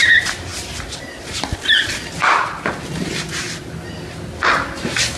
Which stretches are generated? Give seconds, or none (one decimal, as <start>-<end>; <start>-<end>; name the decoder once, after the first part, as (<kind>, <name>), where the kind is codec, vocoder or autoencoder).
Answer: none